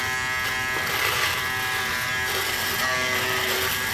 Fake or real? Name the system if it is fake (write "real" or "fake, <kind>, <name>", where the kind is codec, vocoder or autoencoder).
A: real